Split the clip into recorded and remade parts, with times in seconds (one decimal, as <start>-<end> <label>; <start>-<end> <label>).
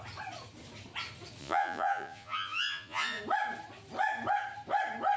0.0-1.4 recorded; 1.4-3.2 remade; 3.2-5.2 recorded